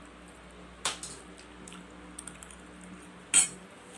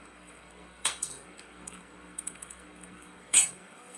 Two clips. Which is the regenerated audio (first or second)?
second